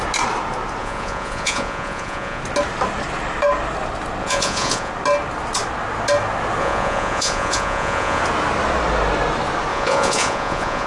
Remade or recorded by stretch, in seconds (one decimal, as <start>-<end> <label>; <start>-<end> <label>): 0.0-0.8 recorded; 0.8-2.4 remade; 2.4-4.2 recorded; 4.2-4.9 remade; 4.9-6.6 recorded; 6.6-8.2 remade; 8.2-9.7 recorded; 9.7-10.9 remade